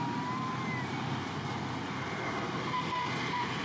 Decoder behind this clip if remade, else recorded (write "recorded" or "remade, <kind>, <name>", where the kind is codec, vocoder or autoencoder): recorded